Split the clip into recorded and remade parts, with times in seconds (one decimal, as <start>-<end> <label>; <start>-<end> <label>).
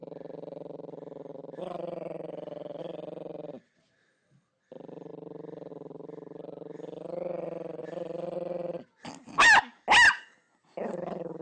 0.0-11.4 recorded